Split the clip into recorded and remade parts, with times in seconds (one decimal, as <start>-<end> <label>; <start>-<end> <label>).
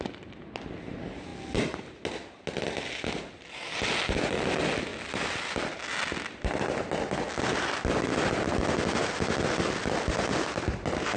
0.0-11.2 recorded